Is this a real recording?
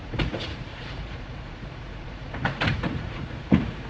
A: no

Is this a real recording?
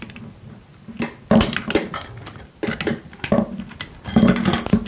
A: yes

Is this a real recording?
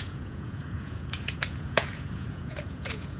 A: no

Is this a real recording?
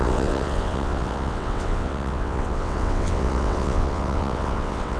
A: no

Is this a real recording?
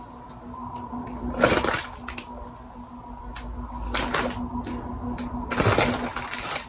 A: yes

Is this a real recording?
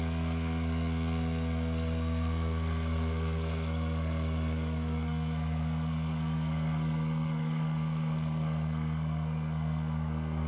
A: no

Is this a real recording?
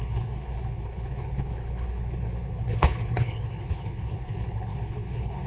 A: no